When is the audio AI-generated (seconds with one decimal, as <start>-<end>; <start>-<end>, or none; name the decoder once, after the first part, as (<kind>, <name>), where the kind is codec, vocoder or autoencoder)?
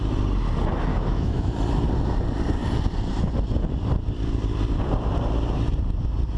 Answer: 0.9-1.5 (autoencoder, DAC-VAE)